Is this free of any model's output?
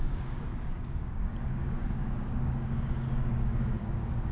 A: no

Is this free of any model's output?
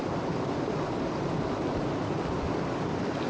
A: yes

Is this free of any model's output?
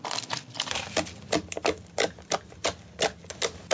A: yes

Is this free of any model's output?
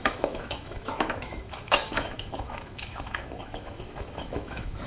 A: no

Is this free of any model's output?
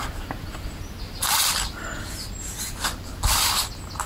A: yes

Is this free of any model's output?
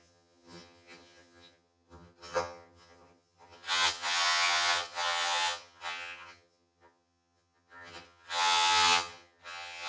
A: no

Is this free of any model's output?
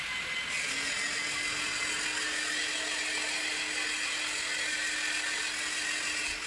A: yes